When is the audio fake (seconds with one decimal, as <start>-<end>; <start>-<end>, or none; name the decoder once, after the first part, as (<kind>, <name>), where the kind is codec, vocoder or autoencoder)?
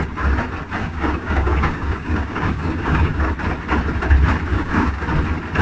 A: 0.8-3.3 (codec, DAC); 4.5-5.0